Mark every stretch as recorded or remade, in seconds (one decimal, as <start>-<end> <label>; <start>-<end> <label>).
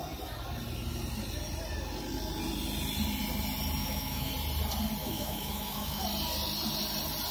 0.0-3.8 recorded; 3.8-4.3 remade; 4.3-5.0 recorded; 5.0-6.0 remade; 6.0-7.3 recorded